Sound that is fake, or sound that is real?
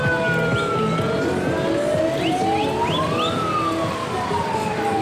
real